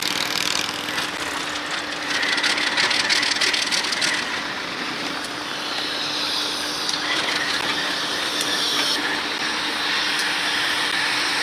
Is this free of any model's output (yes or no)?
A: yes